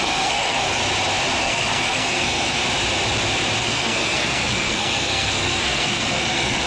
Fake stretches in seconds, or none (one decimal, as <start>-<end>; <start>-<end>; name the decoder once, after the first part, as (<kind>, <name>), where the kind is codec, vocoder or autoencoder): 0.0-0.8 (codec, SNAC); 1.4-2.6; 3.6-6.7